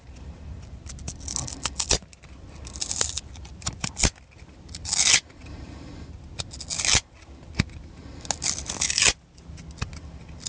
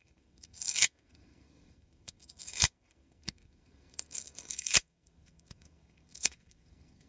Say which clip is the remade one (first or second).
second